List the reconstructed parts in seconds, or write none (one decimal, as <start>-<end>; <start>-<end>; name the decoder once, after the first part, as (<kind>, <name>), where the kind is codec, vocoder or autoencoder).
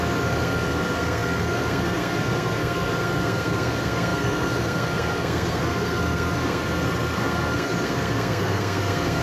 0.0-9.2 (codec, SNAC)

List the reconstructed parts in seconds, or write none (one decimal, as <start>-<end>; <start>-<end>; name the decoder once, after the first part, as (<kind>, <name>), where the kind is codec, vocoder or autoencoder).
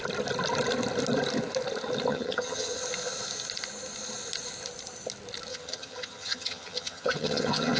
2.1-2.8 (vocoder, HiFi-GAN); 5.5-7.8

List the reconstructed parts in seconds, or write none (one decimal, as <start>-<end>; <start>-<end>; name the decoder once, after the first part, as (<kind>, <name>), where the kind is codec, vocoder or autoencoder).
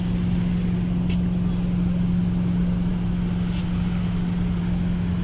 none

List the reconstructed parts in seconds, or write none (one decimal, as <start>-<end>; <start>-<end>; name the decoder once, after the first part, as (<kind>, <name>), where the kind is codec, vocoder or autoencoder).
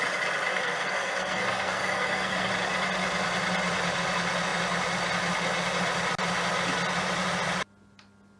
0.5-2.5 (codec, SNAC)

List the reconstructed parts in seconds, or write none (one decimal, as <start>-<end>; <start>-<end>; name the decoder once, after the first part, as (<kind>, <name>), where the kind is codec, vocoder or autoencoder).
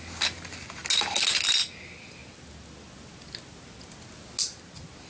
none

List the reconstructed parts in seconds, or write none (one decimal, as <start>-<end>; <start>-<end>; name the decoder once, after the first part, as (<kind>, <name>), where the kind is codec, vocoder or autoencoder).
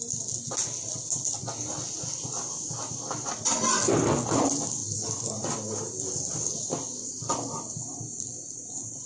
none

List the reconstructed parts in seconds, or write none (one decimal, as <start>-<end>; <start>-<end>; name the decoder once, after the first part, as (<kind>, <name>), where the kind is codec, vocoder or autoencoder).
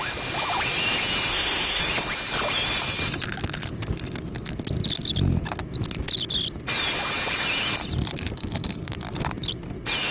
1.3-1.8 (codec, SNAC)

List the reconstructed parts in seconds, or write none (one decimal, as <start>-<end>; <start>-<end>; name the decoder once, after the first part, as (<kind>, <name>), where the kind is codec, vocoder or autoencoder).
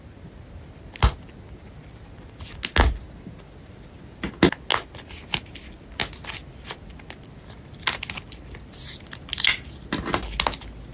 none